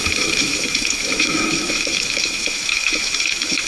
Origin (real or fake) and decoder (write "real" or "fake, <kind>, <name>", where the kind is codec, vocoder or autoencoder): fake, autoencoder, DAC-VAE